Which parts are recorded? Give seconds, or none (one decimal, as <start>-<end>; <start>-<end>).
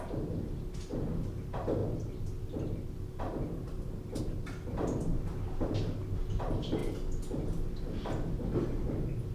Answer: 0.0-9.3